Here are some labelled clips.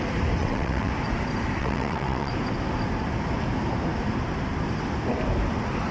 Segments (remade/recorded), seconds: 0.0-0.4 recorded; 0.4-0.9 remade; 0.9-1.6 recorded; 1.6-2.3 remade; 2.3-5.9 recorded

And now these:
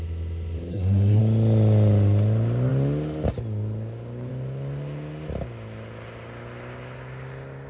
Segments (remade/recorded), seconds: 0.0-0.7 recorded; 0.7-1.2 remade; 1.2-7.7 recorded

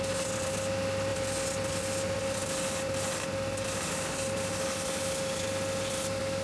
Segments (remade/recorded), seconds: 0.0-6.4 recorded